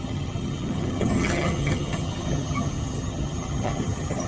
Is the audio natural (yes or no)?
no